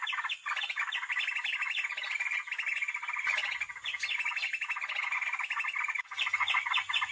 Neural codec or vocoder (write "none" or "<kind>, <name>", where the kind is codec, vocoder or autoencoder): none